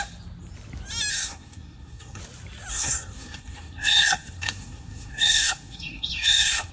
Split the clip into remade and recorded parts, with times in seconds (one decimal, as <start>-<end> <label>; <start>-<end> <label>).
0.0-1.1 recorded; 1.1-2.2 remade; 2.2-2.7 recorded; 2.7-6.7 remade